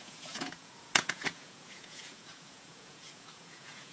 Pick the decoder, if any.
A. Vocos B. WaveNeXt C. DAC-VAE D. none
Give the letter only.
A